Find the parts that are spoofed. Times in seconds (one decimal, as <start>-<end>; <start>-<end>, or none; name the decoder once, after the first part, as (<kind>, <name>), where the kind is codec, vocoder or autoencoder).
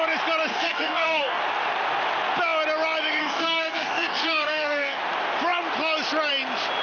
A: 0.5-1.4 (codec, DAC); 3.2-5.0